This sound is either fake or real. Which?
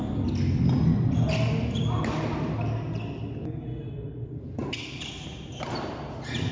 real